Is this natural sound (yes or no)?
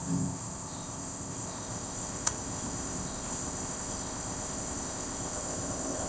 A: no